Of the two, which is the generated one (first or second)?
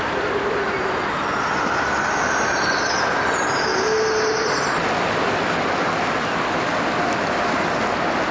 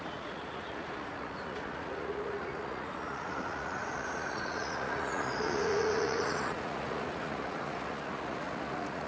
second